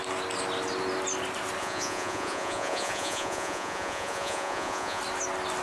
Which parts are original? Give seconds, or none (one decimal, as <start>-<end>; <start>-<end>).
0.0-1.6; 5.0-5.6

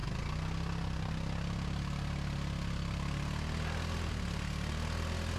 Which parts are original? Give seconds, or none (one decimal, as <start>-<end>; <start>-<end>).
0.0-5.4

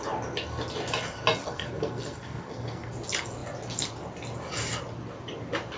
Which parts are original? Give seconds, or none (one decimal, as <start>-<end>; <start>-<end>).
0.0-1.4; 2.9-5.8

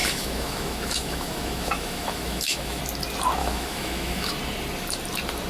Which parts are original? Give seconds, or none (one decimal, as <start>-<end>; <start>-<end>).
2.8-3.4; 4.3-5.5

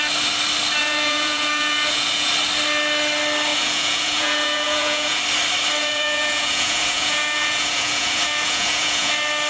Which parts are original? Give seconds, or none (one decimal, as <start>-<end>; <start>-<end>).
0.0-0.8; 2.3-3.5; 5.2-5.8; 9.1-9.5

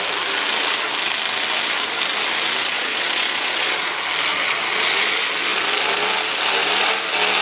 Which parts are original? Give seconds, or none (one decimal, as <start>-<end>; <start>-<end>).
0.0-2.7; 3.9-7.4

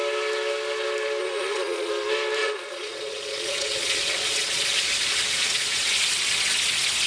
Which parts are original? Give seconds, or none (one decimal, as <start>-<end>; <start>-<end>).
0.0-1.2; 1.9-2.4; 6.1-7.1